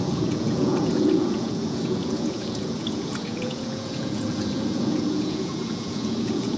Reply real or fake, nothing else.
fake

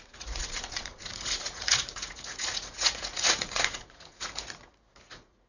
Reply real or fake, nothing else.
fake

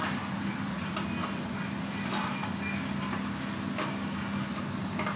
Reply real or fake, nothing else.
real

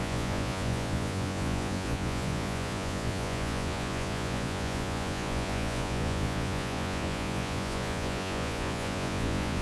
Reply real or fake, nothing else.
fake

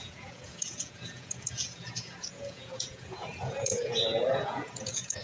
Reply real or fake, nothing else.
fake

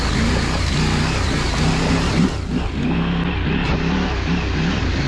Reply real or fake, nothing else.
real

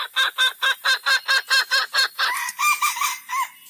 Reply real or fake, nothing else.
real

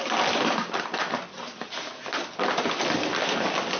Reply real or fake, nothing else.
real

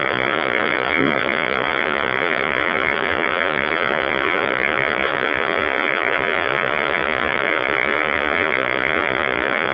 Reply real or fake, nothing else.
fake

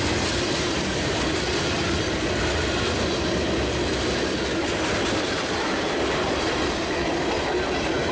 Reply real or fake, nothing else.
real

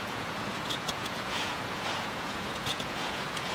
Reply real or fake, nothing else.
fake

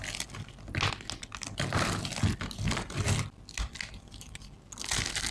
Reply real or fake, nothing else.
real